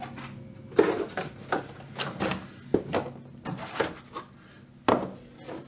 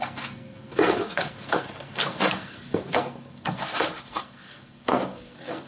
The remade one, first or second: second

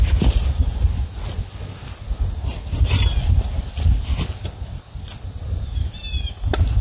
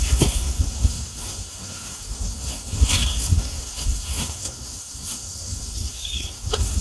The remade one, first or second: second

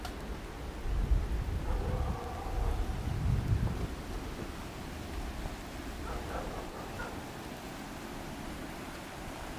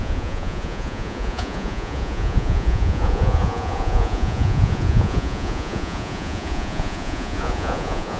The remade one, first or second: second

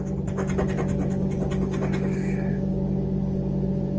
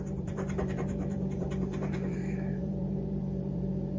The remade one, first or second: second